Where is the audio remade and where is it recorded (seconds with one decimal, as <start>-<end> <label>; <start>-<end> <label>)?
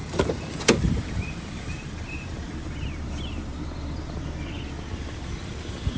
0.0-3.6 remade; 3.6-6.0 recorded